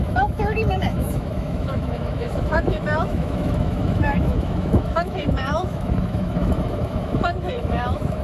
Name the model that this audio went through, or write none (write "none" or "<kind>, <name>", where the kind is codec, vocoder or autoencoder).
autoencoder, DAC-VAE